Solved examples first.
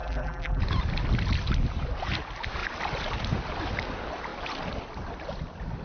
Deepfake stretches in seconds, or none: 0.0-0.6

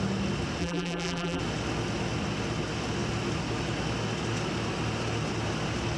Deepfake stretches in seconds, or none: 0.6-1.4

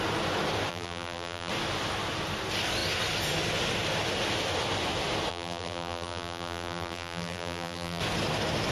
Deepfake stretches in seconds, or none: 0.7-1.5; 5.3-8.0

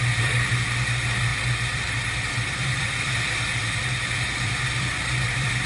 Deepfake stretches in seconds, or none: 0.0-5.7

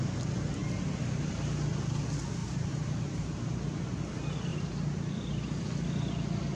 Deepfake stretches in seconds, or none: 2.4-3.5

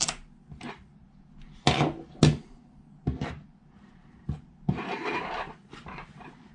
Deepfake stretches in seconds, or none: 5.6-6.5

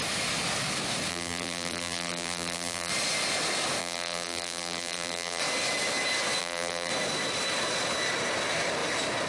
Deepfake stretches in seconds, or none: 1.1-2.9; 3.8-5.4; 6.4-6.9

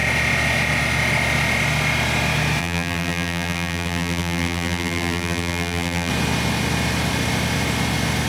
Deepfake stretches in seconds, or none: 2.6-6.1